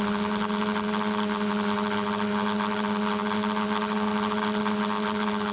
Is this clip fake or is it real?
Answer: real